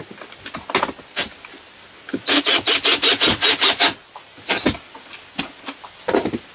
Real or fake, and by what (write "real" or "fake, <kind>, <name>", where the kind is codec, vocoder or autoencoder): real